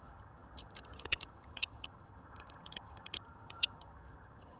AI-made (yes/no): yes